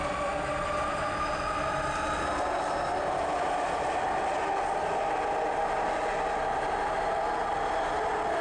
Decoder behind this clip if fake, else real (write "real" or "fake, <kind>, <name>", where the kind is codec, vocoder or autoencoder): real